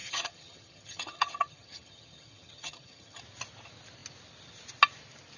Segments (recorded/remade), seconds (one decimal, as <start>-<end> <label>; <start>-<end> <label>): 0.0-3.2 remade; 3.2-5.4 recorded